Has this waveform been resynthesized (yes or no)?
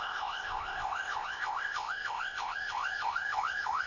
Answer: yes